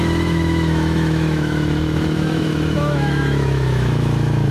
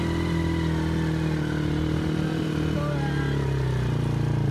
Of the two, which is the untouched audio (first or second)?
second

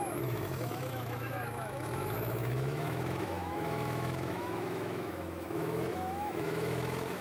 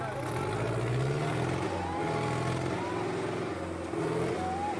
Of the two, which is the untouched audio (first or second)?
second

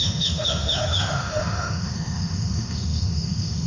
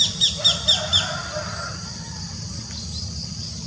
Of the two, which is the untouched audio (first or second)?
second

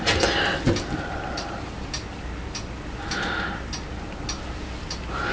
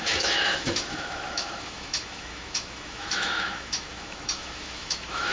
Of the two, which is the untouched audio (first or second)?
first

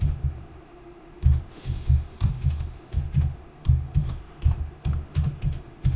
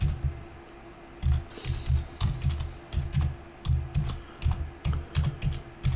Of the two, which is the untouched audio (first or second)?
second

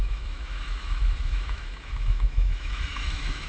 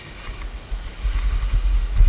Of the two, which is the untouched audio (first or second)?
second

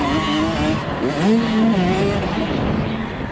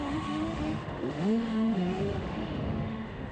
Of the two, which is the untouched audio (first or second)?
first